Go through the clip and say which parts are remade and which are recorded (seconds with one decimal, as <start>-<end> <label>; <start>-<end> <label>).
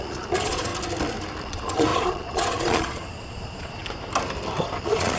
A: 0.0-0.7 remade; 0.7-1.4 recorded; 1.4-3.8 remade; 3.8-4.8 recorded; 4.8-5.2 remade